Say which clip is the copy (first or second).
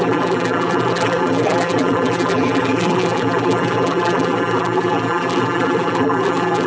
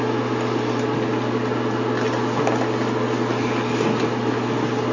first